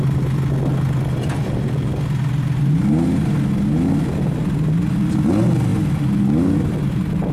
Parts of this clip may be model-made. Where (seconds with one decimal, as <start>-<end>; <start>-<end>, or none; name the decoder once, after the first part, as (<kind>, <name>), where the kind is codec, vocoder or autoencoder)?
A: none